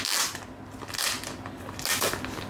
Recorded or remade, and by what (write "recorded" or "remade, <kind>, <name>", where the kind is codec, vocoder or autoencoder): recorded